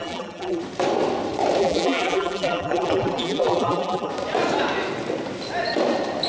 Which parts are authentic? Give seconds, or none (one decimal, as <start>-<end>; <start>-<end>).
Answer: 0.6-1.6; 4.1-6.3